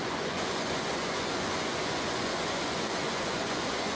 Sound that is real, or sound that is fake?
fake